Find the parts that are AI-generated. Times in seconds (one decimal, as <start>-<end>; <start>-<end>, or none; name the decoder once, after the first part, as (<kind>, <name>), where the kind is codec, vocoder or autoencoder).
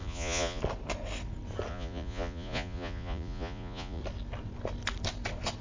0.0-0.6 (vocoder, Vocos); 1.7-4.0